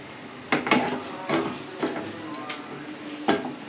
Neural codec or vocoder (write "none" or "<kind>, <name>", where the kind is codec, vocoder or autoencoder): none